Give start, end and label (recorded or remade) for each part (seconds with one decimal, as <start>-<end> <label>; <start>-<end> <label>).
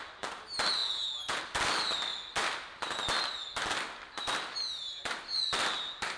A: 0.0-0.8 recorded; 0.8-1.4 remade; 1.4-6.2 recorded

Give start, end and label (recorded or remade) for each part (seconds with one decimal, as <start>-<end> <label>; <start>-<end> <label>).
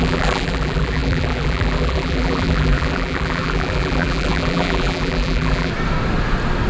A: 0.0-5.7 remade; 5.7-6.7 recorded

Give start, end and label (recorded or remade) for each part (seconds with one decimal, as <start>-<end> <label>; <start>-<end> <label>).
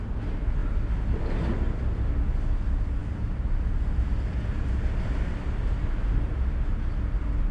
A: 0.0-7.5 recorded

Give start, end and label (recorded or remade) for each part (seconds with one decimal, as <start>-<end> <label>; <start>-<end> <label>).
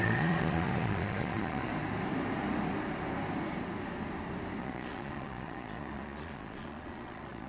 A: 0.0-1.7 remade; 1.7-4.6 recorded; 4.6-7.5 remade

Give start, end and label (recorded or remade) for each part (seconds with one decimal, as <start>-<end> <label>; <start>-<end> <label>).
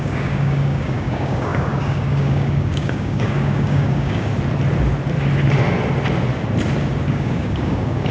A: 0.0-4.3 remade; 4.3-7.1 recorded; 7.1-8.1 remade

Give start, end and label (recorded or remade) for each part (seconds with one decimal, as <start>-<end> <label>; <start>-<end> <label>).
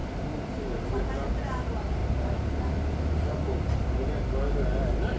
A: 0.0-5.2 recorded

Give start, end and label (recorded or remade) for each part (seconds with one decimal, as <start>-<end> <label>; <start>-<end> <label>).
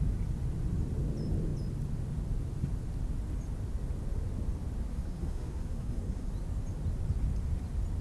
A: 0.0-4.9 recorded; 4.9-6.3 remade; 6.3-8.0 recorded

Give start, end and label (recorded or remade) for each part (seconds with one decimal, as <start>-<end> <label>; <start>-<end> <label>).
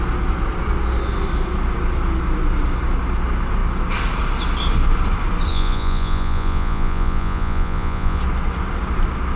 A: 0.0-5.5 recorded; 5.5-8.2 remade; 8.2-9.4 recorded